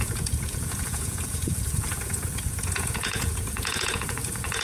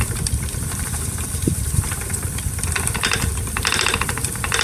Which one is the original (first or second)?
second